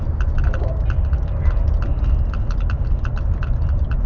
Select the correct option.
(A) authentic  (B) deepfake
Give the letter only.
A